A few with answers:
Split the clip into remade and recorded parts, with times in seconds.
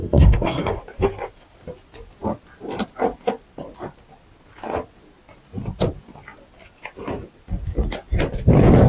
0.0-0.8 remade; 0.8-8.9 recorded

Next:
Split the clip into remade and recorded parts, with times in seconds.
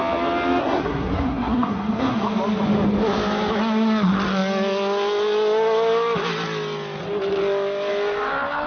0.0-0.6 recorded; 0.6-2.3 remade; 2.3-8.7 recorded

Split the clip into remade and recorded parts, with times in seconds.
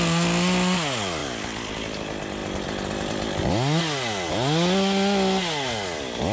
0.0-6.3 recorded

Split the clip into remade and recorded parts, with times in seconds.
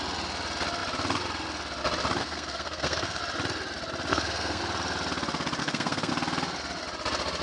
0.0-2.2 recorded; 2.2-3.2 remade; 3.2-4.1 recorded; 4.1-4.6 remade; 4.6-5.6 recorded; 5.6-6.1 remade; 6.1-7.4 recorded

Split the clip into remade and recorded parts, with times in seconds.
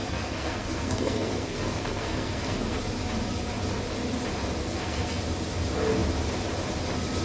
0.0-2.8 remade; 2.8-4.6 recorded; 4.6-5.2 remade; 5.2-7.2 recorded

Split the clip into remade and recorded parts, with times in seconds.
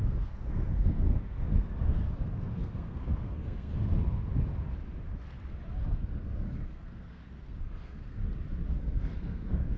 0.0-3.9 remade; 3.9-5.9 recorded; 5.9-8.2 remade; 8.2-8.8 recorded; 8.8-9.8 remade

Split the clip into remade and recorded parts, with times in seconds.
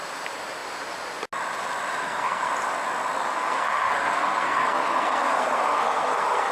0.0-2.0 recorded; 2.0-2.5 remade; 2.5-3.2 recorded; 3.2-6.5 remade